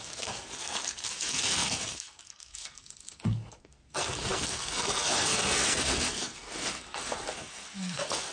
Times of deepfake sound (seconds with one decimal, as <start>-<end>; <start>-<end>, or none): 0.0-8.3